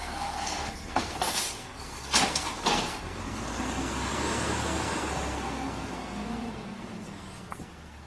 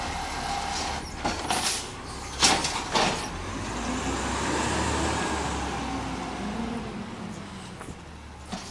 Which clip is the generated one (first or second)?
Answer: first